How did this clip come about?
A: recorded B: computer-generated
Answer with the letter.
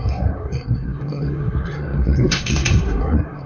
B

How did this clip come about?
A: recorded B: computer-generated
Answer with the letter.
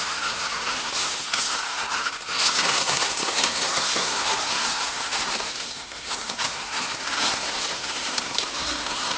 B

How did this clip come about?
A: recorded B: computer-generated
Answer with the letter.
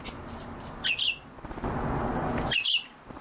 A